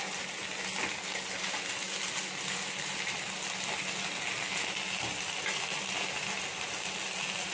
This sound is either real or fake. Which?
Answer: real